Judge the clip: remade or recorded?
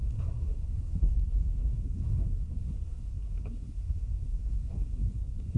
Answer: remade